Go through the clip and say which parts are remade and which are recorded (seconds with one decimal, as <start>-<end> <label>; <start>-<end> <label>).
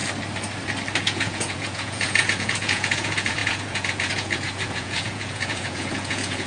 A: 0.0-1.0 recorded; 1.0-6.5 remade